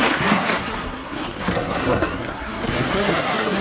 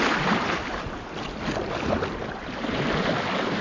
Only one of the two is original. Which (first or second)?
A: second